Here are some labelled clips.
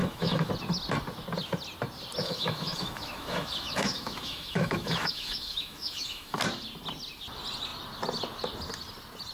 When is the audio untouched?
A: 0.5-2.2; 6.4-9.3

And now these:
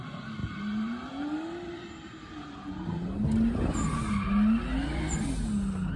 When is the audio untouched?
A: 0.0-0.4; 2.9-6.0

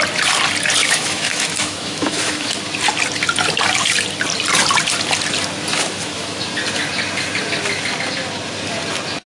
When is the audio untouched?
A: 0.0-0.8; 2.5-5.7; 6.4-9.3

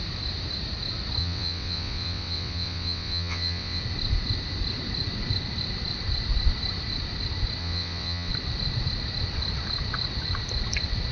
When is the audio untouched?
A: 0.0-1.2; 3.8-7.6; 8.3-11.1

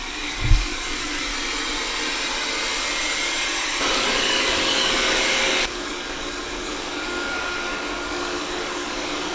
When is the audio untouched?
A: 1.3-3.9

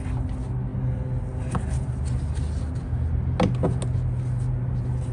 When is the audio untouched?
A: 0.0-5.1